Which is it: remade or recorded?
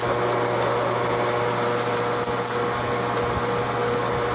recorded